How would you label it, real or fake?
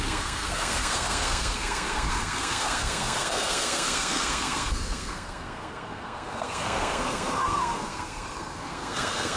fake